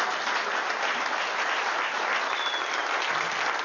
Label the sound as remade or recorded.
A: recorded